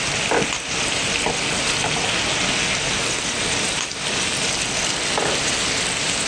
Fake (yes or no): no